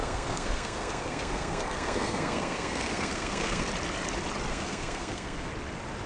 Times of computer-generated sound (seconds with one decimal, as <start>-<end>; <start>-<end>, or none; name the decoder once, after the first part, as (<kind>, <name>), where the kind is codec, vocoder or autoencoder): 0.0-3.7 (codec, SNAC); 4.5-5.5